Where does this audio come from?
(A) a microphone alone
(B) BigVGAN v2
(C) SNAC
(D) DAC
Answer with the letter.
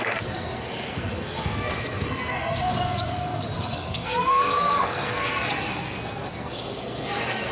C